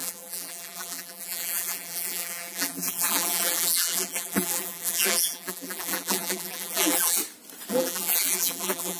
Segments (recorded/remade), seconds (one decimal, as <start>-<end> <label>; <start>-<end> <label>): 0.0-7.2 remade; 7.2-7.7 recorded; 7.7-9.0 remade